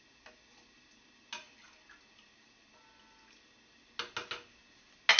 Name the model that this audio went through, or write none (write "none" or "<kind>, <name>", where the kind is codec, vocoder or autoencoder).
none